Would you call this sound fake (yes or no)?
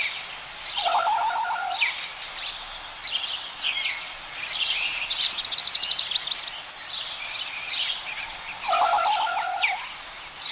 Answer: no